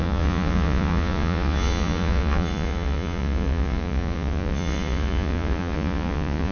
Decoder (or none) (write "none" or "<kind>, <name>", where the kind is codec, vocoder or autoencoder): vocoder, Vocos